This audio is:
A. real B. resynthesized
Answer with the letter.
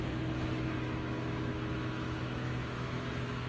B